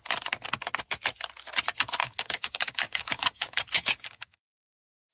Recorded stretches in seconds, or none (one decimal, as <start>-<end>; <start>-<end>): 0.0-2.0